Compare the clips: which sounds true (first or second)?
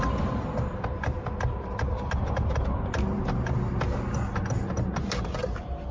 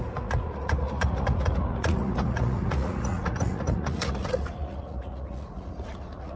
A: first